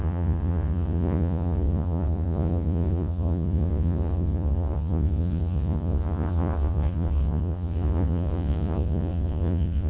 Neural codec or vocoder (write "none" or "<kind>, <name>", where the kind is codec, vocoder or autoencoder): vocoder, Vocos